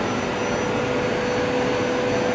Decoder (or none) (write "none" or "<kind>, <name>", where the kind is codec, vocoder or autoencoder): none